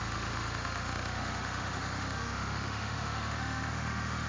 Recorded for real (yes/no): no